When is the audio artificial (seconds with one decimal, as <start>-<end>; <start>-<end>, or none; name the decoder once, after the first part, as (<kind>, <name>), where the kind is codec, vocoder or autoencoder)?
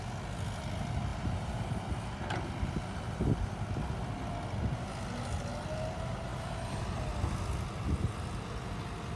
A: none